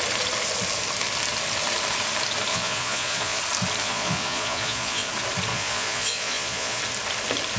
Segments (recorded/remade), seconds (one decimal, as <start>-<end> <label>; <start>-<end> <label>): 0.0-2.5 recorded; 2.5-3.4 remade; 3.4-3.8 recorded; 3.8-5.1 remade; 5.1-5.5 recorded; 5.5-6.8 remade; 6.8-7.6 recorded